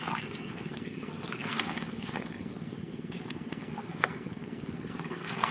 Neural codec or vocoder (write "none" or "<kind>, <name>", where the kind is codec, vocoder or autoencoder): codec, SNAC